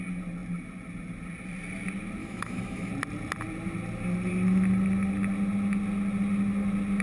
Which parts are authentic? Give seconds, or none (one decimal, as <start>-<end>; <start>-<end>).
0.0-2.2; 2.9-7.0